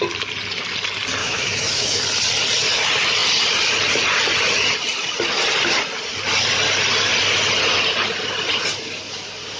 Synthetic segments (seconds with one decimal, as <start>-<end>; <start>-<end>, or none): 1.2-2.0